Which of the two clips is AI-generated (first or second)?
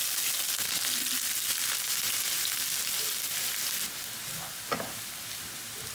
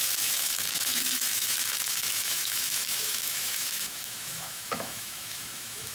second